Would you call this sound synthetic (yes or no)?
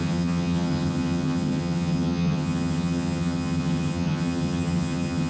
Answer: yes